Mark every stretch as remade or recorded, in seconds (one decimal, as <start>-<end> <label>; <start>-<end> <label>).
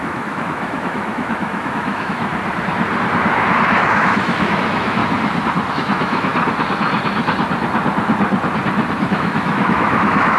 0.0-2.3 remade; 2.3-3.9 recorded; 3.9-5.0 remade; 5.0-5.7 recorded; 5.7-6.3 remade; 6.3-9.1 recorded; 9.1-10.4 remade